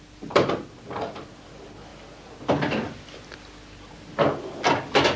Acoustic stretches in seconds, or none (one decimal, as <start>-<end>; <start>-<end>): 0.0-5.2